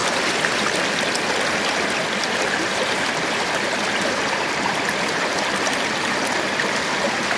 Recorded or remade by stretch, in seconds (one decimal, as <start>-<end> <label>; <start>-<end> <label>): 0.0-0.8 remade; 0.8-2.7 recorded; 2.7-5.9 remade; 5.9-7.4 recorded